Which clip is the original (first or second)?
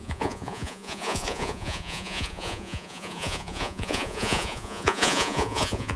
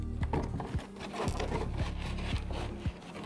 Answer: second